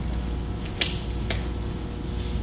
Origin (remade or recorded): recorded